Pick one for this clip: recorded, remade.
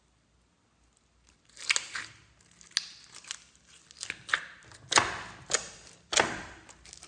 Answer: recorded